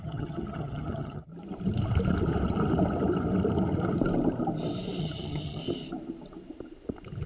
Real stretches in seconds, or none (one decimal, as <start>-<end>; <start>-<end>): 1.3-5.0; 5.6-7.3